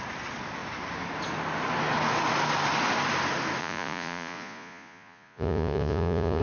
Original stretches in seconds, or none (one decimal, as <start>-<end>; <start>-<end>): 0.0-3.6